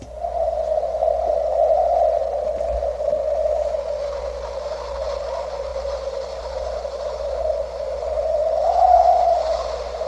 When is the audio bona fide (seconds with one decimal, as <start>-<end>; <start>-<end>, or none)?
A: 0.0-5.7